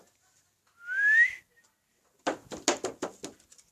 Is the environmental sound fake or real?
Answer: real